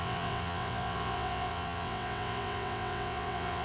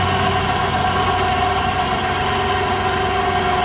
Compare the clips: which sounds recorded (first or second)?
second